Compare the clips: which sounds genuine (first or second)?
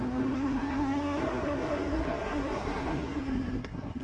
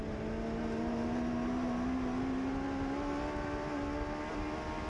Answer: second